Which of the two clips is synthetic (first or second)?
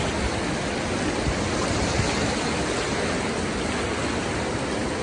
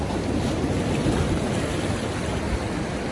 second